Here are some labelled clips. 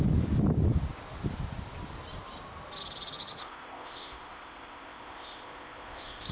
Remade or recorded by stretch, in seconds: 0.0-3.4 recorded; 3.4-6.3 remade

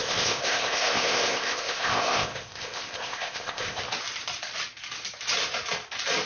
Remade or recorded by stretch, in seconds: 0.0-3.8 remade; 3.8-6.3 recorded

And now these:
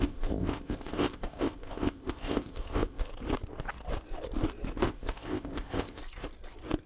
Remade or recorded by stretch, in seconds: 0.0-3.1 remade; 3.1-4.8 recorded; 4.8-6.0 remade; 6.0-6.9 recorded